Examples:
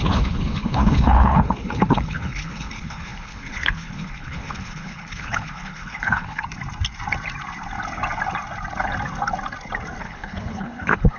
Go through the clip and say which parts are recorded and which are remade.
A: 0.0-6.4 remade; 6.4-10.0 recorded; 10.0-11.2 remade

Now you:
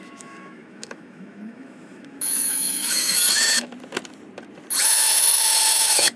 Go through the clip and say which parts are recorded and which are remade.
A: 0.0-3.7 remade; 3.7-4.8 recorded; 4.8-6.2 remade

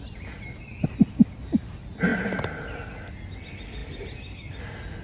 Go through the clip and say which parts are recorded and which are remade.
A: 0.0-5.0 recorded

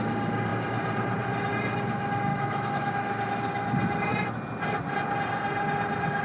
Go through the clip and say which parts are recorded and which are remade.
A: 0.0-2.3 recorded; 2.3-2.9 remade; 2.9-6.2 recorded